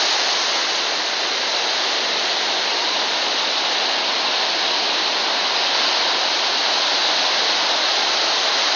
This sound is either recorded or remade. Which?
recorded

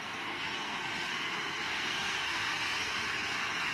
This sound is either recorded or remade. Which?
remade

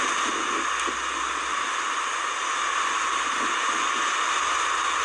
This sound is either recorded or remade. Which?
recorded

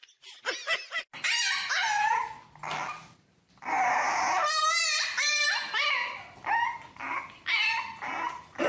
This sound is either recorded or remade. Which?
recorded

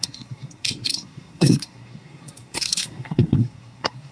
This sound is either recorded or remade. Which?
remade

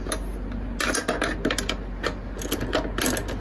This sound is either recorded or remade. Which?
recorded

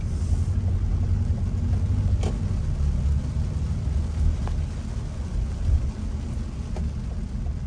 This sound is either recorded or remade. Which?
recorded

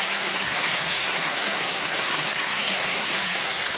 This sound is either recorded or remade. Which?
remade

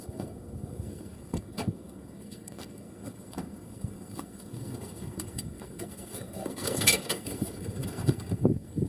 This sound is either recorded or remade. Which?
remade